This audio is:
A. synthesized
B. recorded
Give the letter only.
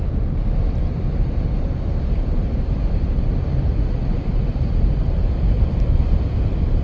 A